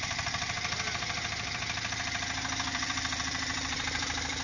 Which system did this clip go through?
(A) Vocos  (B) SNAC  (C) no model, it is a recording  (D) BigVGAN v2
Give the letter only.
D